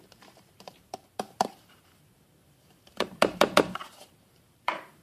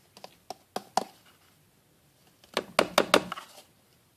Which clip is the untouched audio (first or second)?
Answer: second